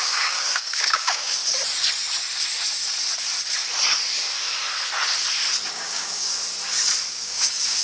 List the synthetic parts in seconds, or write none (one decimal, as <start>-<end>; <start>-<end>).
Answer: 0.0-1.4; 5.7-6.3; 7.1-7.8

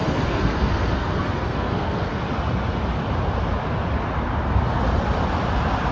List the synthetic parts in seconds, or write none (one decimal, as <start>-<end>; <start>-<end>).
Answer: 0.0-2.2

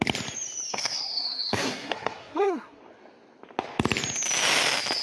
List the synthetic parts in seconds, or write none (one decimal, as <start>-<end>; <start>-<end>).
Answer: 0.7-2.8